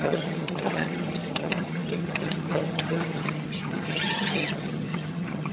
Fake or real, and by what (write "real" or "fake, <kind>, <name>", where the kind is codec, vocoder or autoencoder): fake, vocoder, HiFi-GAN